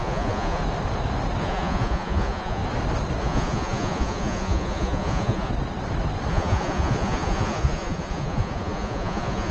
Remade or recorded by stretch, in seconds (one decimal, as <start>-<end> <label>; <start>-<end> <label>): 0.0-0.6 remade; 0.6-1.4 recorded; 1.4-2.6 remade; 2.6-3.2 recorded; 3.2-5.5 remade; 5.5-6.3 recorded; 6.3-9.5 remade